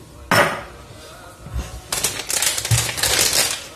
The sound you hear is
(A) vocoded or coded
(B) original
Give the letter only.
B